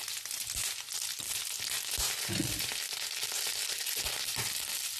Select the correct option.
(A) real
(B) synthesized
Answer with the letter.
A